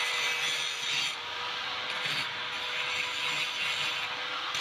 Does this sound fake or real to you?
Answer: real